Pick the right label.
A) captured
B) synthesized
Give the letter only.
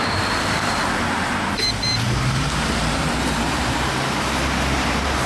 B